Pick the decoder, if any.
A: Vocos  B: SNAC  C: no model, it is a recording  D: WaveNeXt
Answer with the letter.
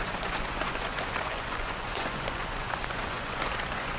A